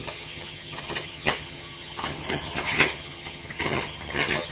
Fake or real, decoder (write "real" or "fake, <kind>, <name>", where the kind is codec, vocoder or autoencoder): fake, vocoder, HiFi-GAN